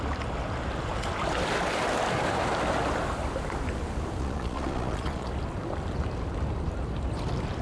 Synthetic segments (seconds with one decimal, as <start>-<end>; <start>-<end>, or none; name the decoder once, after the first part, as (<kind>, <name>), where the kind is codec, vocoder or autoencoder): 4.2-5.3 (vocoder, Vocos)